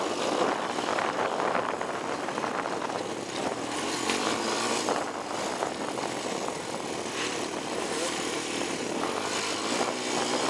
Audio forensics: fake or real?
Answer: real